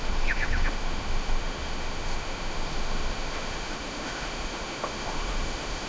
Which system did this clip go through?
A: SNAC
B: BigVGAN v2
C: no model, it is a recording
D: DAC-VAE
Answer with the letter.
D